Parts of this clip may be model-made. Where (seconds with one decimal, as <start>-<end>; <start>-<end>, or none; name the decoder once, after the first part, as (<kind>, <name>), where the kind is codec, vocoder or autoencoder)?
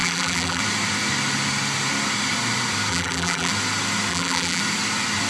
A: 0.0-0.6 (vocoder, BigVGAN v2); 2.9-3.5; 4.1-4.6